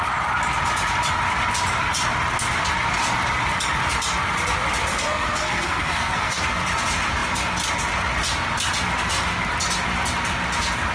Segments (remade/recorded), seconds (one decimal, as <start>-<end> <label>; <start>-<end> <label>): 0.0-4.9 recorded; 4.9-6.4 remade; 6.4-10.9 recorded